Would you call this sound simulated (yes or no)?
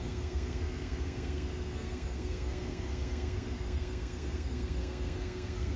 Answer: yes